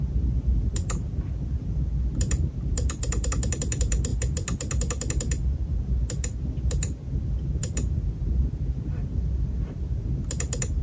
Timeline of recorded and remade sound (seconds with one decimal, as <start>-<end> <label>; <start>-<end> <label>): 0.0-10.8 recorded